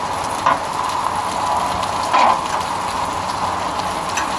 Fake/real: real